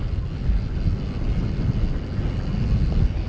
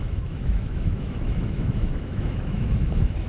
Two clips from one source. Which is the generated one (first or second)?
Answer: second